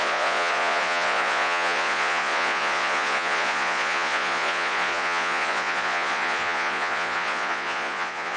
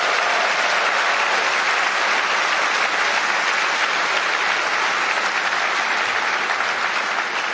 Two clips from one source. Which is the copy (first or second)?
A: first